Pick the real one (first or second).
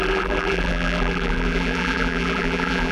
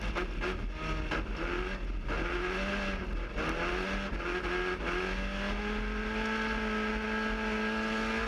second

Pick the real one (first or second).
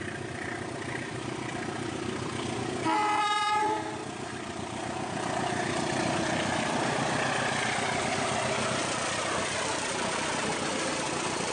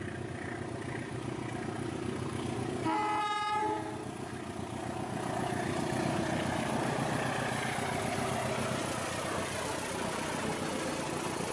second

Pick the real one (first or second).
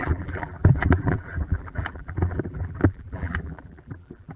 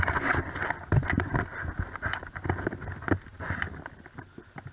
second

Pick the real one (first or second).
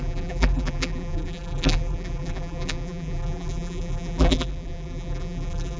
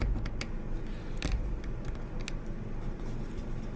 second